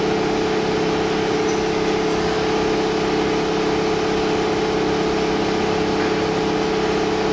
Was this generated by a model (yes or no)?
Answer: no